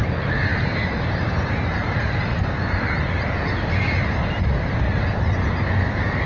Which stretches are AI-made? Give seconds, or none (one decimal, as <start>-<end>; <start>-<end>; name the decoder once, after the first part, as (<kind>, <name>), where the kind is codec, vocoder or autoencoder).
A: 0.5-4.3 (vocoder, BigVGAN v2)

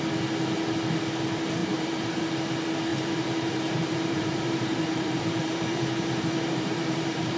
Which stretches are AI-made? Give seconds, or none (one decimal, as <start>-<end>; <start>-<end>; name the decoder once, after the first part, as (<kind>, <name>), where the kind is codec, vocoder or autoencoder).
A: 1.6-2.2 (vocoder, BigVGAN v2); 2.9-7.4

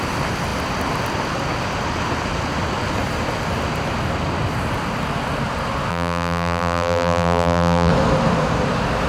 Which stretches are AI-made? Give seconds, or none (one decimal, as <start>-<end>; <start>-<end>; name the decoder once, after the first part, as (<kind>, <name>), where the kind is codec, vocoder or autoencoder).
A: 5.9-7.9 (vocoder, BigVGAN v2)

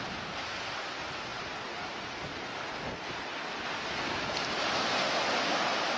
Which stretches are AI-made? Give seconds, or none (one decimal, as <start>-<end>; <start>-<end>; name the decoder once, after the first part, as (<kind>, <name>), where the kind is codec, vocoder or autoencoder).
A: none

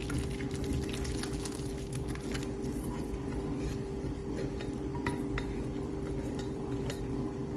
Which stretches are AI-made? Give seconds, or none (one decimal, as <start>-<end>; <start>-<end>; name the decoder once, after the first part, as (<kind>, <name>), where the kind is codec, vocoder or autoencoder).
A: none

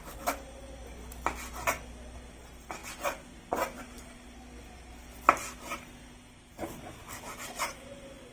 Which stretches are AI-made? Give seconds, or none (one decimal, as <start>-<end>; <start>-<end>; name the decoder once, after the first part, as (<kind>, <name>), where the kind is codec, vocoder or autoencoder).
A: none

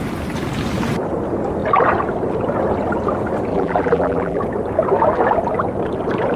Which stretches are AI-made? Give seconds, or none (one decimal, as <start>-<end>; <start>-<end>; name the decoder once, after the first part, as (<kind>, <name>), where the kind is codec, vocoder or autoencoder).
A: 3.5-4.4 (vocoder, BigVGAN v2)